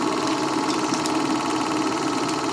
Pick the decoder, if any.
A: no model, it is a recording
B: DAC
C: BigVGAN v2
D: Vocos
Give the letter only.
A